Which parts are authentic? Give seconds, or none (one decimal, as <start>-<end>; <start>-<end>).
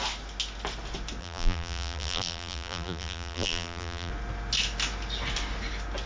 0.0-1.2; 4.1-6.1